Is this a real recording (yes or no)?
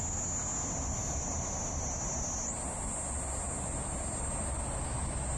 yes